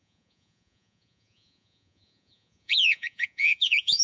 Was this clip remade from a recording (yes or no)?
yes